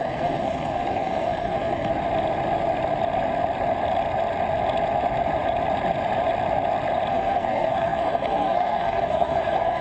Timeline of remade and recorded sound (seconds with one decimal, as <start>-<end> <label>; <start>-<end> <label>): 0.0-1.9 remade; 1.9-7.1 recorded; 7.1-9.8 remade